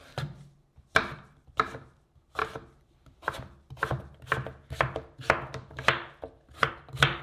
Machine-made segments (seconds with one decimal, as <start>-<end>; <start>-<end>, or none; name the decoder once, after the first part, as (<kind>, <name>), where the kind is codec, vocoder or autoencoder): none